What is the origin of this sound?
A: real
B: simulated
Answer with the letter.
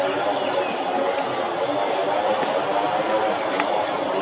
A